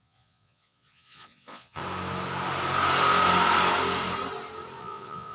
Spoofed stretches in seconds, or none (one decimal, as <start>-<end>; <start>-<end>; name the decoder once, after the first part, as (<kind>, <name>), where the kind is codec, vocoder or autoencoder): 0.0-1.8 (vocoder, Vocos); 4.8-5.3